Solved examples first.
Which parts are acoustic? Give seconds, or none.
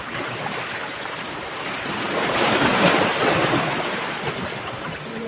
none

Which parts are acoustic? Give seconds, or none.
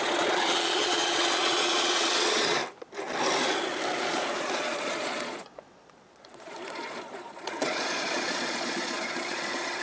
2.6-4.0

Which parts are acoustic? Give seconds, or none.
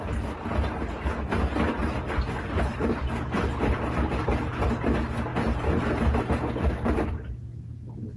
0.0-8.2